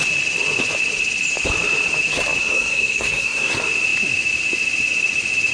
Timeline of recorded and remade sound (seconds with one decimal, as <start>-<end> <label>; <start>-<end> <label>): 0.0-2.4 recorded; 2.4-3.5 remade; 3.5-5.5 recorded